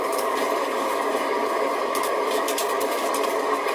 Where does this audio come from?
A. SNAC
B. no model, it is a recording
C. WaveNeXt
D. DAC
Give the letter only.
D